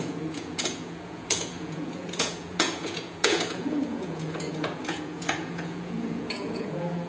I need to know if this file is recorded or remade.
remade